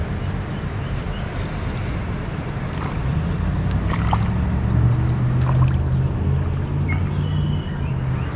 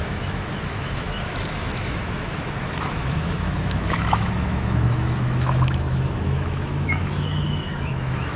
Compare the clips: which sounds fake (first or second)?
second